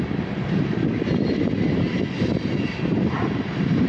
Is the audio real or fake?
real